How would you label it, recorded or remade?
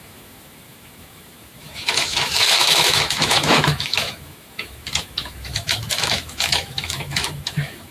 remade